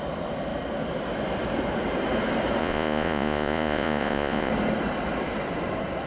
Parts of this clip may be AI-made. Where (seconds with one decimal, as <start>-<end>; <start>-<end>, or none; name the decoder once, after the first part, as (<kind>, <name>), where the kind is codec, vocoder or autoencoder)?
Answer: 2.6-4.5 (vocoder, Vocos)